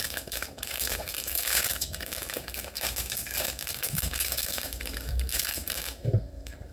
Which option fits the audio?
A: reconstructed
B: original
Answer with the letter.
A